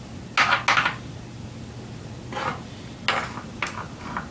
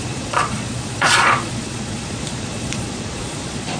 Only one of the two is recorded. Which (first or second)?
first